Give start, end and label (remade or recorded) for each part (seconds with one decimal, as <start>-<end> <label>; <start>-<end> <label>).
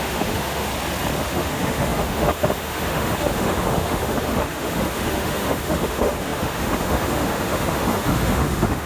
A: 0.0-0.7 remade; 0.7-1.2 recorded; 1.2-8.9 remade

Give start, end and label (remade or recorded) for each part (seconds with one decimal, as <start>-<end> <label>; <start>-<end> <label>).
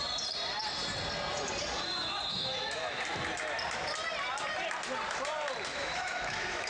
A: 0.0-2.3 recorded; 2.3-3.0 remade; 3.0-5.7 recorded; 5.7-6.7 remade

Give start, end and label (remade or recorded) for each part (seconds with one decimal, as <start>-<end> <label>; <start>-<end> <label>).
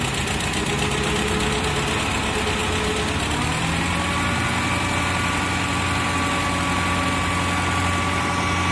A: 0.0-8.7 recorded